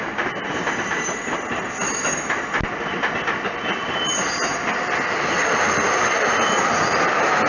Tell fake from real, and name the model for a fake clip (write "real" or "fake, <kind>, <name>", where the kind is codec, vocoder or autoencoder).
real